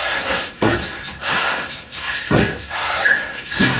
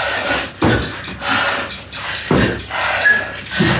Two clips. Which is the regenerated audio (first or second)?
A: first